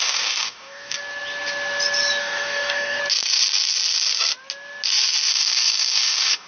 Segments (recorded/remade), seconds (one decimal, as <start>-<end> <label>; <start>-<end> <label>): 0.0-1.0 remade; 1.0-2.2 recorded; 2.2-3.0 remade; 3.0-5.3 recorded; 5.3-6.5 remade